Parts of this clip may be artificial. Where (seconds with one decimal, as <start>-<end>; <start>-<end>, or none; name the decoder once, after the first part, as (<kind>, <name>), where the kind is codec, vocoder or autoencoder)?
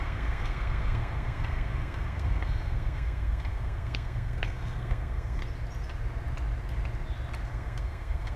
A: 0.0-5.4 (codec, SNAC); 7.5-8.4